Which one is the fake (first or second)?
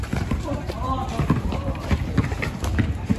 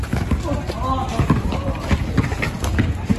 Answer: first